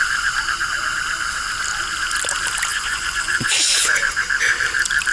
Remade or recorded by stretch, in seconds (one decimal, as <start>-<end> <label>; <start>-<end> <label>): 0.0-2.7 recorded; 2.7-4.2 remade; 4.2-5.1 recorded